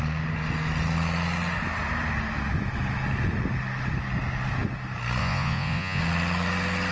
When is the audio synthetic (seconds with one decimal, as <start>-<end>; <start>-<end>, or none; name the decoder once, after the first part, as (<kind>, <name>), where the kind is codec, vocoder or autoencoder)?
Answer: 5.2-6.0 (vocoder, Vocos)